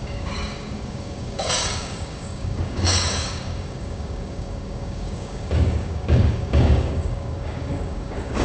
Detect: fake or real fake